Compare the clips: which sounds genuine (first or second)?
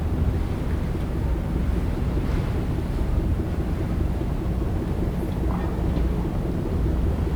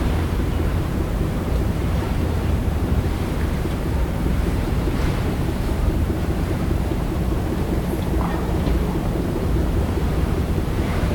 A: first